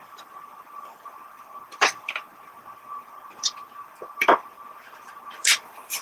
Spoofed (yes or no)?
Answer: yes